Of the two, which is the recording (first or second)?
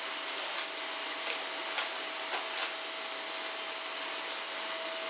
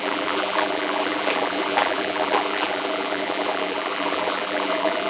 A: first